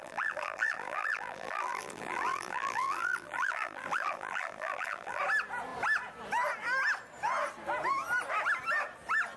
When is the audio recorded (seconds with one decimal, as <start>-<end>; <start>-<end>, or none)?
5.2-9.4